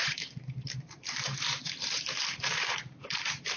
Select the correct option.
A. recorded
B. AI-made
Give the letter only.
B